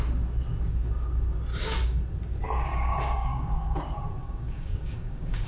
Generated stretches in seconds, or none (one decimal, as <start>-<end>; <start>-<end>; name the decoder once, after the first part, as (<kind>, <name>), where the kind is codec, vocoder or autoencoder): 1.5-2.0 (codec, DAC); 2.7-3.8; 4.2-5.5